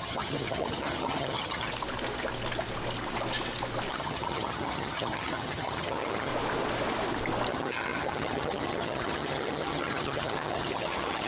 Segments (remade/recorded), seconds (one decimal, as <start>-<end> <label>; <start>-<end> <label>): 0.0-1.7 remade; 1.7-3.9 recorded; 3.9-6.3 remade; 6.3-7.5 recorded; 7.5-11.3 remade